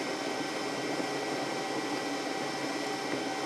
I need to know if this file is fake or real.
real